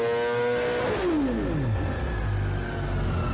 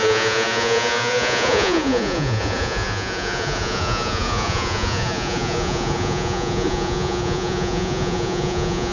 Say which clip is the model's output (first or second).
second